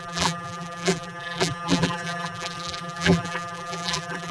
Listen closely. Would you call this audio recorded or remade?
remade